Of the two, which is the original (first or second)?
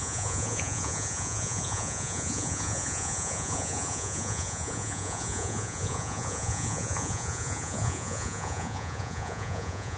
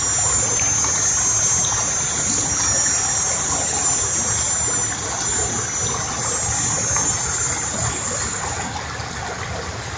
second